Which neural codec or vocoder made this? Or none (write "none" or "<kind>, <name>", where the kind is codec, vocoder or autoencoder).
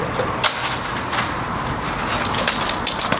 none